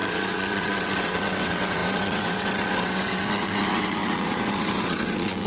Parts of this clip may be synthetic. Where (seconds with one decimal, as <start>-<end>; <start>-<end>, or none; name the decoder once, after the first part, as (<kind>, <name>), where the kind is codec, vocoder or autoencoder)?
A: 0.0-5.5 (vocoder, WaveNeXt)